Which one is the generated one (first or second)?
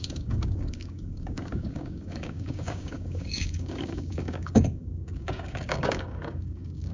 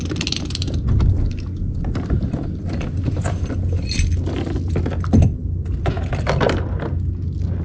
first